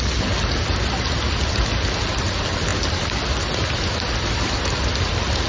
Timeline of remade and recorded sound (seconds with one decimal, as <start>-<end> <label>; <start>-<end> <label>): 0.0-5.5 recorded